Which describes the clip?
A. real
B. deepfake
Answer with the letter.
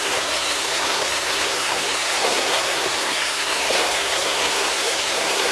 B